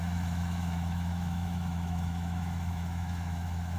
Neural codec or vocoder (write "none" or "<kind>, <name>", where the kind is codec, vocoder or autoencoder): autoencoder, DAC-VAE